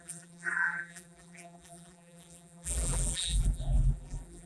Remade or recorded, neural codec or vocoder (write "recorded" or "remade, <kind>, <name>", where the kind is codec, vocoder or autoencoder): remade, vocoder, BigVGAN v2